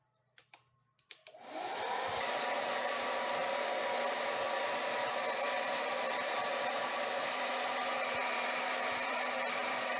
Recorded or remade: remade